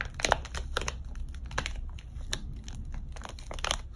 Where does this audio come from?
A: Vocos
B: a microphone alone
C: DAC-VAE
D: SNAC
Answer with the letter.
B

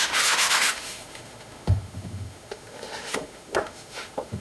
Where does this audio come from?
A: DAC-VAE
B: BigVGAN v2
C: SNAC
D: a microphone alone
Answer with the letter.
A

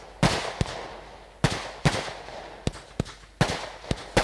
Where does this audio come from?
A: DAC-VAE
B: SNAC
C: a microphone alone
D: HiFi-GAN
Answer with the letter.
C